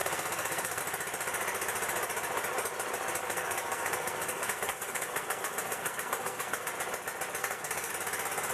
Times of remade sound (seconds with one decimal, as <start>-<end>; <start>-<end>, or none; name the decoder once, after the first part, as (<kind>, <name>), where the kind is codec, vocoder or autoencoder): 0.0-0.8 (codec, SNAC); 3.2-6.7; 7.4-7.9

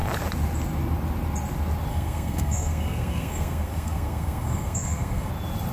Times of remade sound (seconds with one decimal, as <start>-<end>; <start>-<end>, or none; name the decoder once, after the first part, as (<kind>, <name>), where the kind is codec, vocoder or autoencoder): 1.9-5.3 (codec, SNAC)

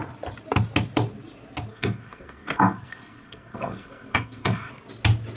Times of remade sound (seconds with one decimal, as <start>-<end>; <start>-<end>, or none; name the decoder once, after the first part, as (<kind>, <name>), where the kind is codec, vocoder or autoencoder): 1.7-4.7 (codec, SNAC)

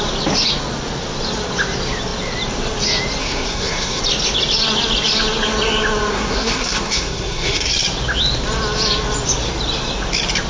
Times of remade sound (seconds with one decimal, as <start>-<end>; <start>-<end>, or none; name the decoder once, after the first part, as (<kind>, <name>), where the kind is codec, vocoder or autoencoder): 3.2-4.0 (codec, SNAC); 6.1-7.7

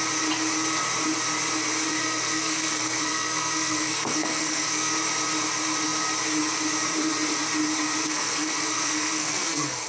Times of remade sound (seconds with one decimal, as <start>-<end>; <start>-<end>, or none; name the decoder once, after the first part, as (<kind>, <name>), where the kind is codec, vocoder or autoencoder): 2.0-4.9 (codec, SNAC); 8.0-9.9

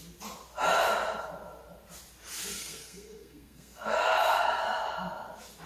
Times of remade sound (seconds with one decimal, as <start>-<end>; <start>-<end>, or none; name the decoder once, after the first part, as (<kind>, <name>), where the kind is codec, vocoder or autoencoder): 2.4-4.6 (codec, SNAC)

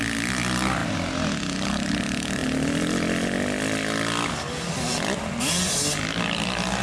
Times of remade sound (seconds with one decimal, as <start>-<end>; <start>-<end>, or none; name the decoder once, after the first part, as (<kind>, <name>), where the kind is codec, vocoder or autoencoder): none